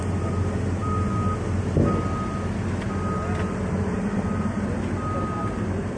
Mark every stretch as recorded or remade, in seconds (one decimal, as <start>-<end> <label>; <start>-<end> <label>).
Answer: 0.0-6.0 recorded